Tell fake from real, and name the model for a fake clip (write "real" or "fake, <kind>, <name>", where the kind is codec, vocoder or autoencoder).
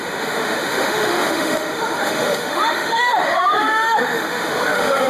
fake, autoencoder, DAC-VAE